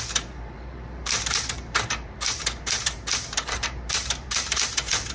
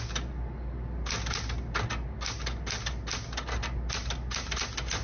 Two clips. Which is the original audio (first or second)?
second